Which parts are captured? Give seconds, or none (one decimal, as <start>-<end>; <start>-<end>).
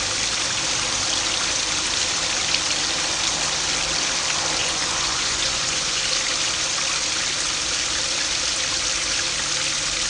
0.0-4.6; 6.0-10.1